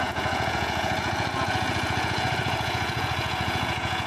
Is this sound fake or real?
fake